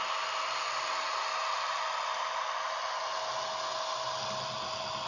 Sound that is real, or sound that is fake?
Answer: real